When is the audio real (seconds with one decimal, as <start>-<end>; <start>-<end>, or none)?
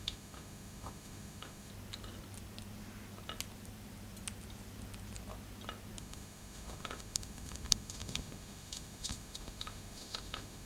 1.7-6.0